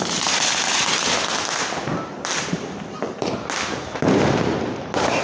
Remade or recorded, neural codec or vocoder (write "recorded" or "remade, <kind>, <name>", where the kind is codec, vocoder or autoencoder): recorded